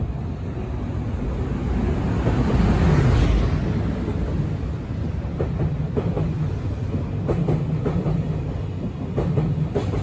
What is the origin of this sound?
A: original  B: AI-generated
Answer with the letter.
A